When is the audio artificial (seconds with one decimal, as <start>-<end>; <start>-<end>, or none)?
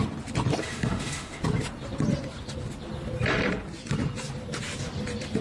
0.6-1.4